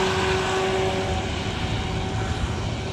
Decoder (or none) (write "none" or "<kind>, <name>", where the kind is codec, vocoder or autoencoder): none